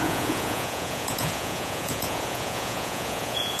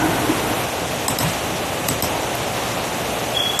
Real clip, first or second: second